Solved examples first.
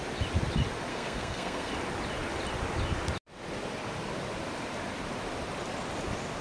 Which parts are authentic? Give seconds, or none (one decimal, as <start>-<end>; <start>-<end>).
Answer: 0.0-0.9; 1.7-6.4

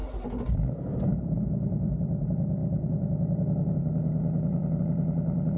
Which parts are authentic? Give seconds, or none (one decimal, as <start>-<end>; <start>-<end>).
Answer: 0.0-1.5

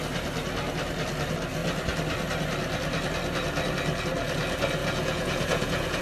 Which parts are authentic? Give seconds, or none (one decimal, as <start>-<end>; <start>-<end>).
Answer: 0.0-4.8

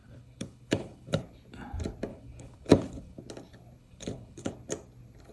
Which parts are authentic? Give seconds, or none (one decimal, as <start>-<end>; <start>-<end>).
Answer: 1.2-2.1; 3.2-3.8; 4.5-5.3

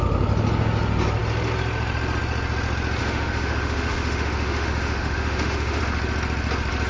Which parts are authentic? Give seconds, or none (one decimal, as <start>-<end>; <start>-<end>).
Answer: 0.0-3.0; 5.8-6.9

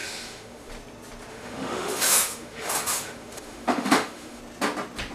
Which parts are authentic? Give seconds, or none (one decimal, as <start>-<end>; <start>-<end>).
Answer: 0.7-1.3; 4.4-5.1

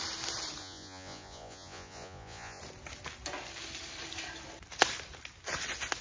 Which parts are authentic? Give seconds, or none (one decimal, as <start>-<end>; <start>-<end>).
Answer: 0.0-0.6; 2.6-6.0

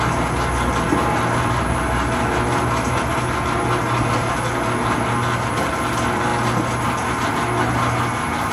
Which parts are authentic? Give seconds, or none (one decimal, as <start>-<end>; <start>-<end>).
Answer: 0.0-8.5